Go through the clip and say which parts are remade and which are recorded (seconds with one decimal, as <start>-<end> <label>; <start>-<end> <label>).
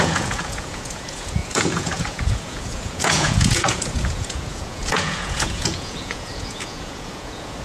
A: 0.0-7.6 remade